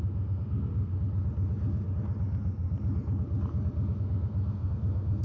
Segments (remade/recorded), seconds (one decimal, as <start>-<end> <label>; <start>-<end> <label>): 0.0-0.9 remade; 0.9-4.0 recorded; 4.0-5.2 remade